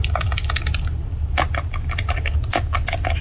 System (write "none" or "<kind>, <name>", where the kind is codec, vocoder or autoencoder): none